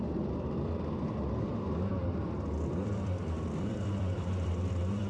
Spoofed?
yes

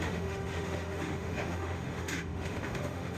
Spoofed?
yes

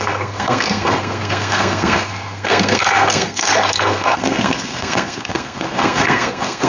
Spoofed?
yes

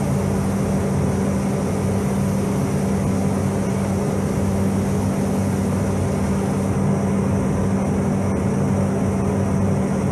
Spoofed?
no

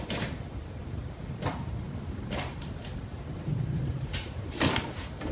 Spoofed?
yes